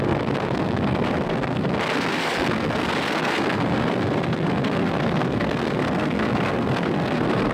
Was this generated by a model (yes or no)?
yes